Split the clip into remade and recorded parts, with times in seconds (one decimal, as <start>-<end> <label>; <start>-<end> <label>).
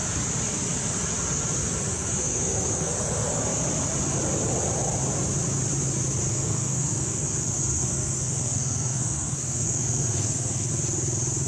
0.0-1.9 recorded; 1.9-2.9 remade; 2.9-6.3 recorded; 6.3-10.7 remade; 10.7-11.5 recorded